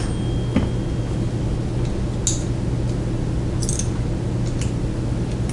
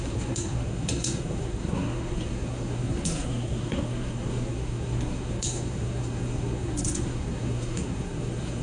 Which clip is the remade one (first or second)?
second